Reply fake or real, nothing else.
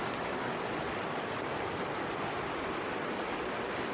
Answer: real